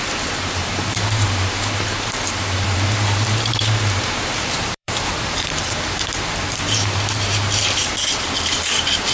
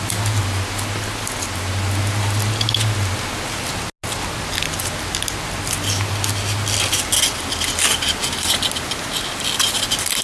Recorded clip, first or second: second